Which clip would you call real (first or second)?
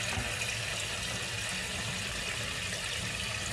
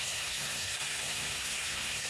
first